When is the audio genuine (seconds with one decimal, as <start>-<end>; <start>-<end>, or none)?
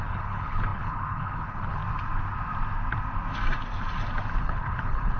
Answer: 1.8-4.4